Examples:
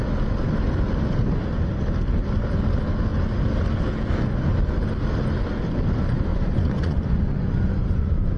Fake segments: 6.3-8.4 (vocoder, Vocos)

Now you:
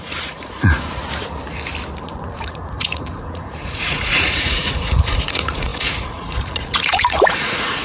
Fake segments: 0.0-1.0 (vocoder, Vocos); 2.0-7.8

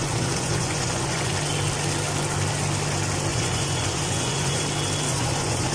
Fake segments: 0.0-1.3 (vocoder, Vocos); 3.3-4.6; 5.1-5.7

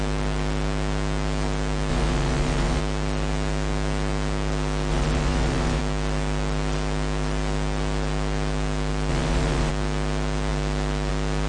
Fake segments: 1.9-2.8 (vocoder, Vocos); 4.9-5.8; 9.1-9.7

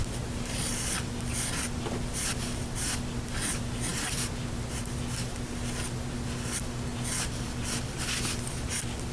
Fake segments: none